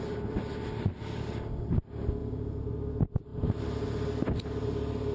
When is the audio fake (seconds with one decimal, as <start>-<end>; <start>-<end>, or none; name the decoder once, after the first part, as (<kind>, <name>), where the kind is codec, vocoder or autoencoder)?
2.2-2.7 (vocoder, Vocos)